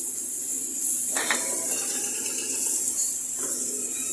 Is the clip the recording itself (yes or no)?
no